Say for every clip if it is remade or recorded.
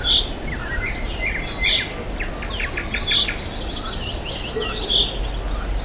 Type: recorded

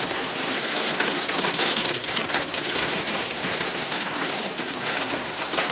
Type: remade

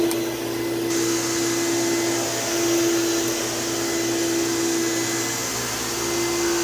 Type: recorded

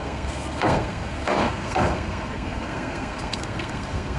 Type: remade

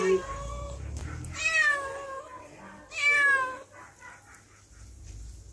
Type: recorded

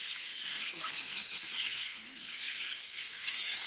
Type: remade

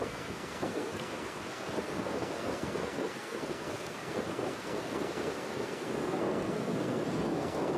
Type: remade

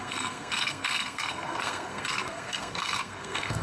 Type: remade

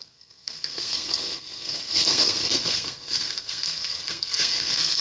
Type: remade